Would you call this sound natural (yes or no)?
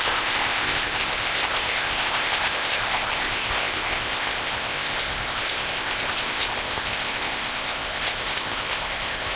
no